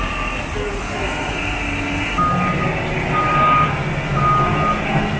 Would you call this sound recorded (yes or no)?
yes